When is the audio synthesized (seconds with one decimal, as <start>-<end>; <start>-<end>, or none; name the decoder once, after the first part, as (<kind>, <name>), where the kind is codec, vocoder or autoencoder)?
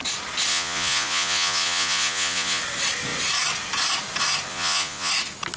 0.5-2.6 (vocoder, Vocos); 4.5-5.1